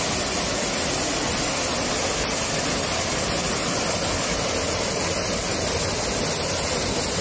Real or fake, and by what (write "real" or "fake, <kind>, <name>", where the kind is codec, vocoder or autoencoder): real